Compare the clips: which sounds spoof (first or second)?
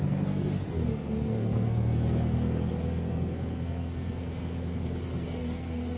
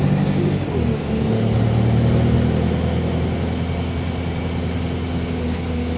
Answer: first